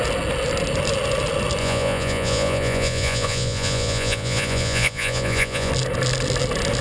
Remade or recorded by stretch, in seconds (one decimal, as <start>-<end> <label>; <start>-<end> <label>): 0.0-1.6 recorded; 1.6-5.7 remade; 5.7-6.8 recorded